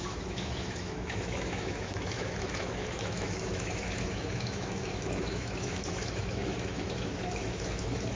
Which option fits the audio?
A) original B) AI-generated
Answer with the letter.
B